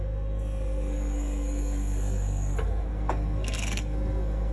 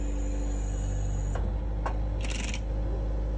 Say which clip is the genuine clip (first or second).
second